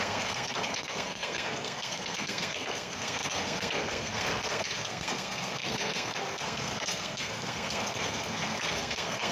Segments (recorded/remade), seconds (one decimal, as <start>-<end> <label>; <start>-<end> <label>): 0.0-9.3 remade

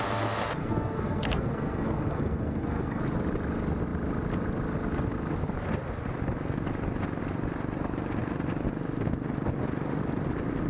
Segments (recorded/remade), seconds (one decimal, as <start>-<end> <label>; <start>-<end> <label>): 0.0-0.6 recorded; 0.6-3.0 remade; 3.0-10.7 recorded

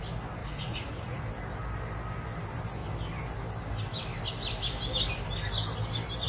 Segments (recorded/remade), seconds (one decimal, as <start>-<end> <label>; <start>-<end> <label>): 0.0-0.4 recorded; 0.4-1.2 remade; 1.2-6.3 recorded

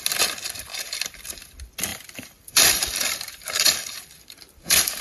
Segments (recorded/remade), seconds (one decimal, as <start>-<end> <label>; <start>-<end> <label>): 0.0-0.7 recorded; 0.7-1.2 remade; 1.2-1.9 recorded; 1.9-5.0 remade